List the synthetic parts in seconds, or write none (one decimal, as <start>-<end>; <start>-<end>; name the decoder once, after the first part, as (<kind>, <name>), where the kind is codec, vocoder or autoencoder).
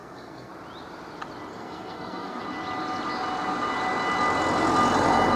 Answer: 0.0-0.5 (codec, SNAC); 1.5-2.4